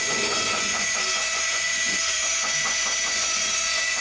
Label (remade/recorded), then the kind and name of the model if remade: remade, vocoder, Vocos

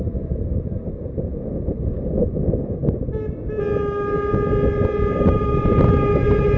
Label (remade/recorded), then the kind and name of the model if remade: recorded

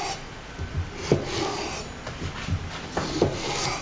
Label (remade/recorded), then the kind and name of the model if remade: recorded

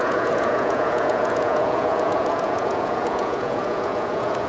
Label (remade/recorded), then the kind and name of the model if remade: remade, vocoder, Vocos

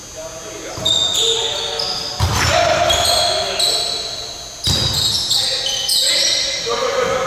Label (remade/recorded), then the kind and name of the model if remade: recorded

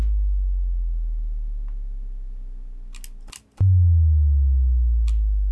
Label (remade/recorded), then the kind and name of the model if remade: recorded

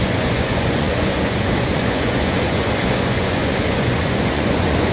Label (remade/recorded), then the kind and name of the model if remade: remade, vocoder, Vocos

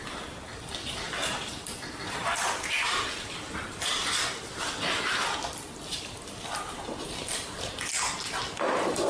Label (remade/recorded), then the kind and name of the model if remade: remade, vocoder, BigVGAN v2